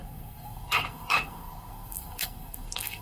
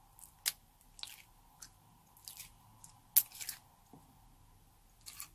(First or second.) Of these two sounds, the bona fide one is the second